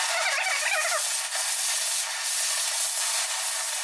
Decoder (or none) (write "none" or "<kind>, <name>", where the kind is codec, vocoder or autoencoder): none